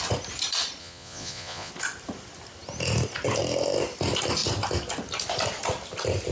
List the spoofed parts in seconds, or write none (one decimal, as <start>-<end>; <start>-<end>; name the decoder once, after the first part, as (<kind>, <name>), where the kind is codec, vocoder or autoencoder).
0.8-1.7 (vocoder, Vocos)